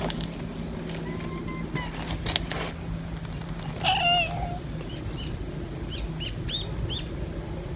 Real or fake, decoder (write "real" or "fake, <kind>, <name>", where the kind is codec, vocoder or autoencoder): real